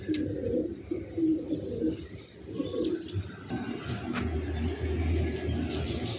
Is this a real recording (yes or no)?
yes